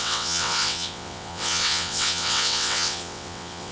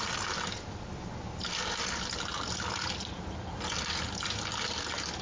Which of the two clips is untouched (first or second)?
second